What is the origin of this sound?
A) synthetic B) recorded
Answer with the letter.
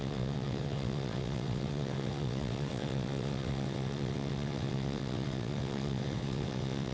A